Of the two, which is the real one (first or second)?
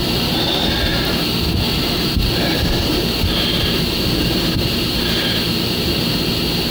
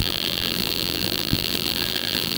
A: first